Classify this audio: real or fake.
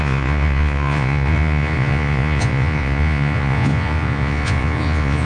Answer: fake